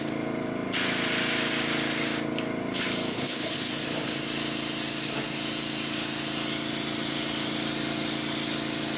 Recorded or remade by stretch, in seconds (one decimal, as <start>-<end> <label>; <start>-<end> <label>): 0.0-3.1 recorded; 3.1-3.7 remade; 3.7-9.0 recorded